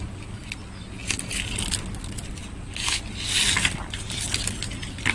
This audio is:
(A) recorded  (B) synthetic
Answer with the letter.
A